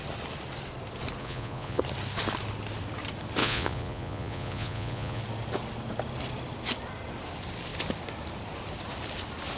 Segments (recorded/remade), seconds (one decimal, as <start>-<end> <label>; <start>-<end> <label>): 0.0-1.2 recorded; 1.2-1.8 remade; 1.8-3.4 recorded; 3.4-5.2 remade; 5.2-9.6 recorded